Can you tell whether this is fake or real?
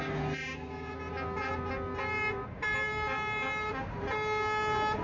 real